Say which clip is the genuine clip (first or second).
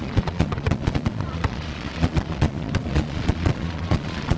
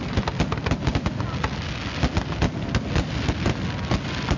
second